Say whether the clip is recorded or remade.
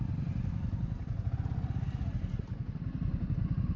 recorded